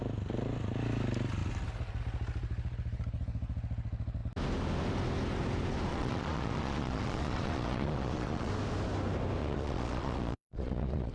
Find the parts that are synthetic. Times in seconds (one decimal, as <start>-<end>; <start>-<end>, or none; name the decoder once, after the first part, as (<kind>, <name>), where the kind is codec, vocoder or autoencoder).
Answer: 5.9-8.5 (vocoder, Vocos); 9.4-11.1